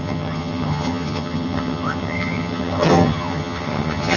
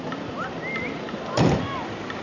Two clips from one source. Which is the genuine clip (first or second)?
second